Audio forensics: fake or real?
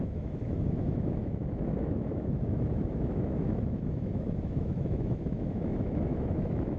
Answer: fake